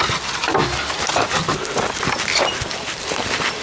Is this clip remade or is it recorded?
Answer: recorded